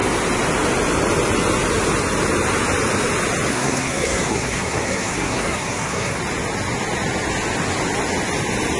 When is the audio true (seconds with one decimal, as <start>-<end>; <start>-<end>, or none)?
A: 0.0-3.5; 6.2-8.8